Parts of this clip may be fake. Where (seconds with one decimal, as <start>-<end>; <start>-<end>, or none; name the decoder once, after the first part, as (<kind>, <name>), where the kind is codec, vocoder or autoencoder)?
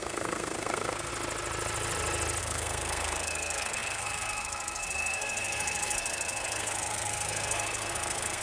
0.0-1.1 (codec, SNAC); 2.4-8.4